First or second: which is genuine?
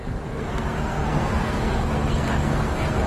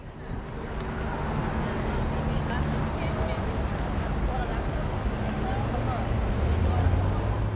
second